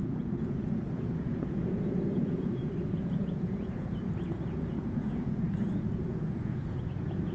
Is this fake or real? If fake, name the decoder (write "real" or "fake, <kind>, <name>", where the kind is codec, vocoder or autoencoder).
fake, vocoder, Vocos